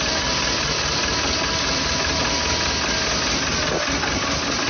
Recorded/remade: recorded